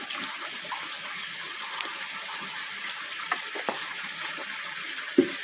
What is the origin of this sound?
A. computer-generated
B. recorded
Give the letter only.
B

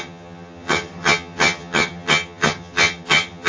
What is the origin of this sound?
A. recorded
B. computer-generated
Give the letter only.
B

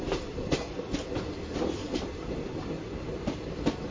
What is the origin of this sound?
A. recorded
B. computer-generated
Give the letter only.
A